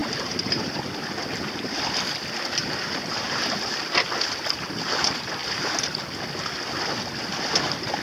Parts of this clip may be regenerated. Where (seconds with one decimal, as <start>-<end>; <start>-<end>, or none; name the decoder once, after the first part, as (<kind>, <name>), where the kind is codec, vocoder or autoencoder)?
0.0-0.8 (vocoder, BigVGAN v2); 2.6-3.8